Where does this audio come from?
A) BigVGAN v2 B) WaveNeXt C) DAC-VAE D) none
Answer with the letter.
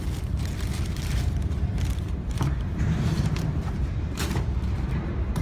A